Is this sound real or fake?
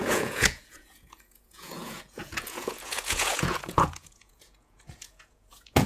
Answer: fake